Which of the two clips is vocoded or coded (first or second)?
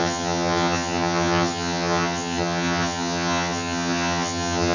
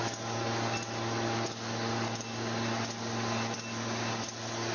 first